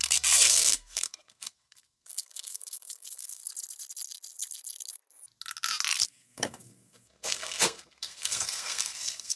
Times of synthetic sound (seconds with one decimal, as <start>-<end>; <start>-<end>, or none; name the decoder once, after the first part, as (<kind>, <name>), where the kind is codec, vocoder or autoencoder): 0.0-3.4 (codec, SNAC); 6.1-9.4